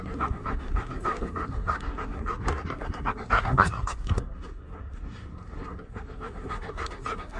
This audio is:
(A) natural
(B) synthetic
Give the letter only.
B